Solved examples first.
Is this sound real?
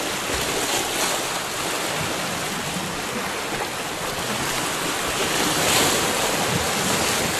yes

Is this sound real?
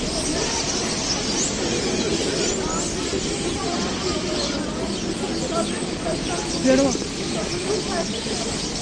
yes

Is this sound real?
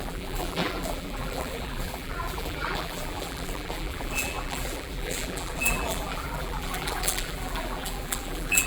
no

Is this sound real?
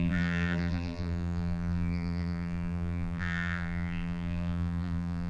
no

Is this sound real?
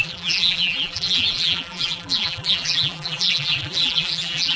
no